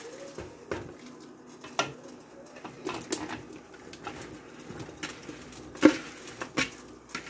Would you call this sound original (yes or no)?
yes